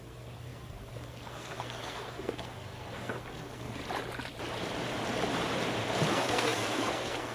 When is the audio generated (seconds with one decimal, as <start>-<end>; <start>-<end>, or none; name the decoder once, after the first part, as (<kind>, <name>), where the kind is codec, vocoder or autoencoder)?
0.0-3.8 (codec, SNAC); 6.1-7.3